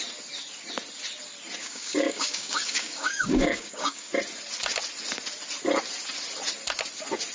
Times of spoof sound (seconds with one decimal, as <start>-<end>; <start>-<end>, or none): 1.6-4.1